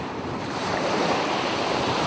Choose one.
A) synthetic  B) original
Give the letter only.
A